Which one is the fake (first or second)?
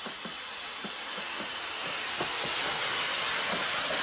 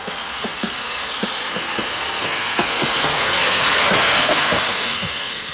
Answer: second